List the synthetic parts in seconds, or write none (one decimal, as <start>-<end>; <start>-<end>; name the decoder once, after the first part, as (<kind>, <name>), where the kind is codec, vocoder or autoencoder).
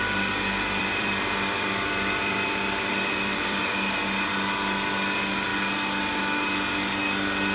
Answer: 0.8-3.6 (vocoder, BigVGAN v2)